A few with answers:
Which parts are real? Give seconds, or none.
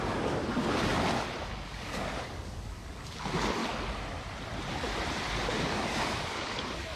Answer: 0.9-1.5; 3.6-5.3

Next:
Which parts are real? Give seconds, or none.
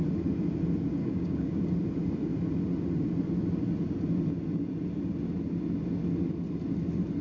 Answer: 0.0-1.0; 1.6-7.2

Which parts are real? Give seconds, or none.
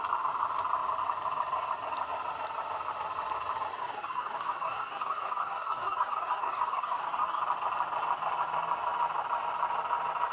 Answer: 0.0-3.7; 7.4-10.3